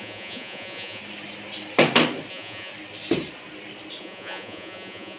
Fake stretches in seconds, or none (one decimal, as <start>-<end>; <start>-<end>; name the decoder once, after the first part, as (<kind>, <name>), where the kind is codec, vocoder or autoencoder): 0.0-1.0 (vocoder, Vocos); 2.3-2.7; 4.0-5.2